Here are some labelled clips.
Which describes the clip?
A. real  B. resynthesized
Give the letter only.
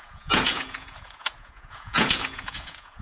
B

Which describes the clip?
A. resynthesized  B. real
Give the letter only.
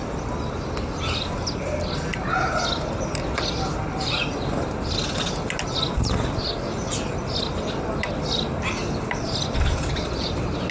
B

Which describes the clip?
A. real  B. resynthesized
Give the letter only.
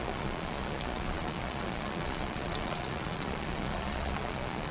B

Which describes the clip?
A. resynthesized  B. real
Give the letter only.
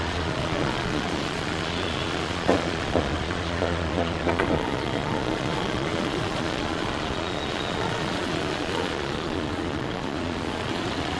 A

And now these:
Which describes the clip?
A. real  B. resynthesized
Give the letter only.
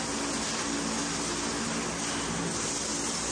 A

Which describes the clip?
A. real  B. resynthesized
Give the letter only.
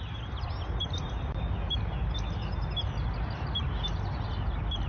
A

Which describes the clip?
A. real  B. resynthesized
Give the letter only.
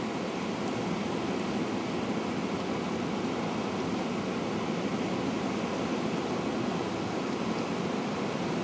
A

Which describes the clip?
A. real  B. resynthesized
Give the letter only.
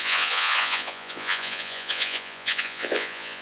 B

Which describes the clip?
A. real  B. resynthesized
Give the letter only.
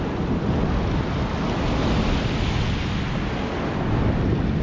A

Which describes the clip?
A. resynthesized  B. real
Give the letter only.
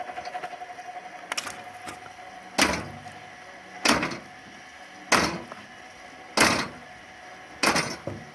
B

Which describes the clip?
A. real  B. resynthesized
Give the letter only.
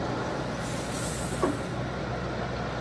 A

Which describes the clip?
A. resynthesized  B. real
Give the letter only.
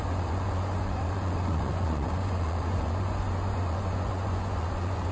A